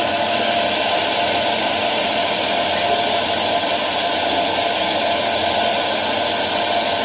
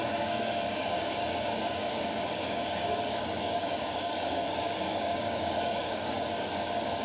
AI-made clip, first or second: second